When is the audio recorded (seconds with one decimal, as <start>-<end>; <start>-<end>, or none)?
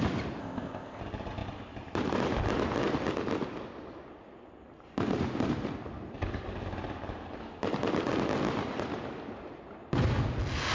0.0-0.4; 1.0-10.7